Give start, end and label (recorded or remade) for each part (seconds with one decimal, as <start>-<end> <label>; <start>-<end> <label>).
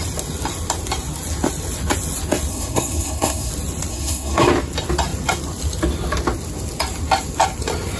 0.0-2.5 recorded; 2.5-3.5 remade; 3.5-3.9 recorded; 3.9-4.5 remade; 4.5-8.0 recorded